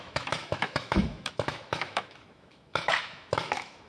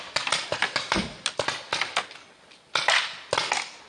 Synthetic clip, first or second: first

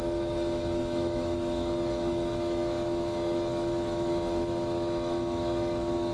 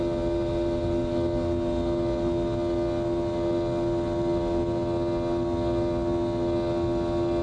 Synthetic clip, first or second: first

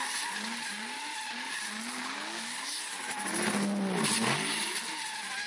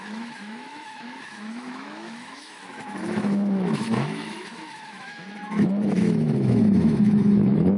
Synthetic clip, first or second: second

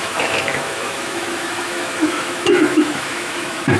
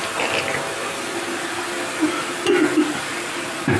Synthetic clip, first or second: first